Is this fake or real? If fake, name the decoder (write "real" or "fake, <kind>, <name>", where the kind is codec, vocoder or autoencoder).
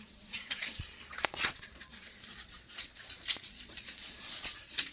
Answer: fake, vocoder, Vocos